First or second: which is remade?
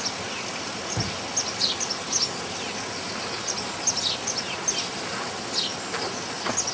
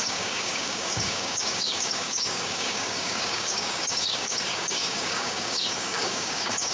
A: second